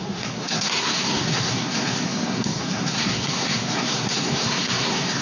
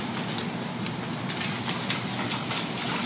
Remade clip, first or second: first